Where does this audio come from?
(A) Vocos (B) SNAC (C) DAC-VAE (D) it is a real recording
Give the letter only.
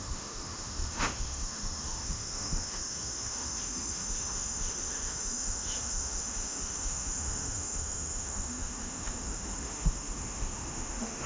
C